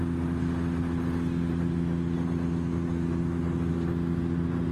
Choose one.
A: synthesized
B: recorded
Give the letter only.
B